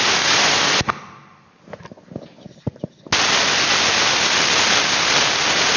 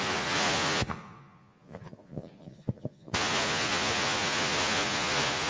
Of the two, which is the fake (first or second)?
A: second